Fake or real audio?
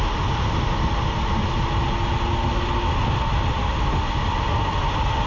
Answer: real